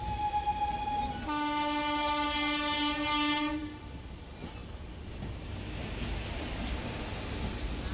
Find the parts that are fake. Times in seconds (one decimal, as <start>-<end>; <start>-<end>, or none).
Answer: none